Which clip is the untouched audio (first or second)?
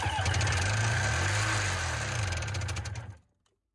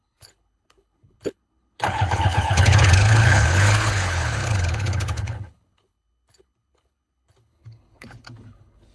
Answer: first